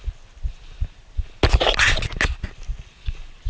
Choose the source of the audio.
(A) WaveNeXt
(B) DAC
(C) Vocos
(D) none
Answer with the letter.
D